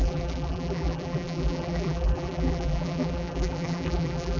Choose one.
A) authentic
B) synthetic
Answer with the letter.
B